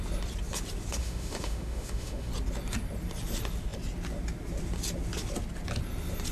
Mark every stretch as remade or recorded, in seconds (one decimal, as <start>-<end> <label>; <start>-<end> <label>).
0.0-1.0 recorded; 1.0-2.3 remade; 2.3-6.3 recorded